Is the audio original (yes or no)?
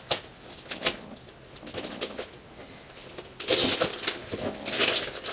yes